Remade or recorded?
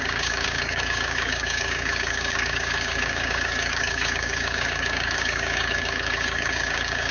remade